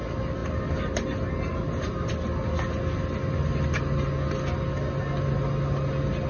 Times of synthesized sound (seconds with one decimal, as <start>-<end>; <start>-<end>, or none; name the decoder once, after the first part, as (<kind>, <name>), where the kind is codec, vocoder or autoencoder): none